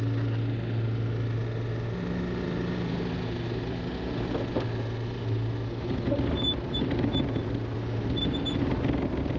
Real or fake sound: real